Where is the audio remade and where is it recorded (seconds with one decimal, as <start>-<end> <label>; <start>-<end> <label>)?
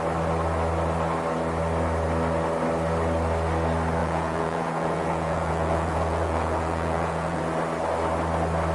0.0-4.0 recorded; 4.0-7.4 remade; 7.4-8.7 recorded